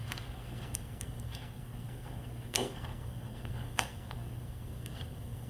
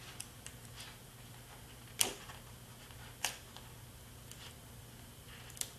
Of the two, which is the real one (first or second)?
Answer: second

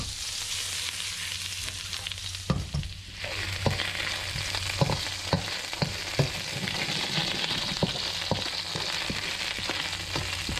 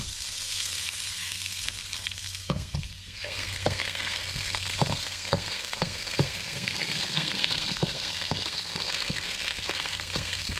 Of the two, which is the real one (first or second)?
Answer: first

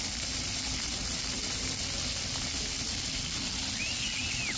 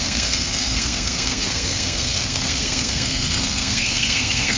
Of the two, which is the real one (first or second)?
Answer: first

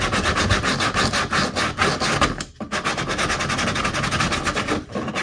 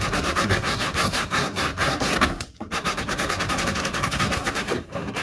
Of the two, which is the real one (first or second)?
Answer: first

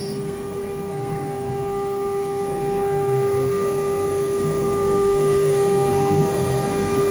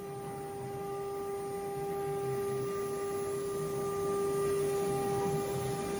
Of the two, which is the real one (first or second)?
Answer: second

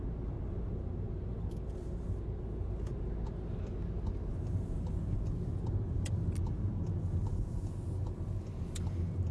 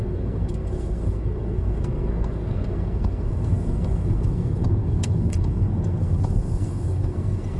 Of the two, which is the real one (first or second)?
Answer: first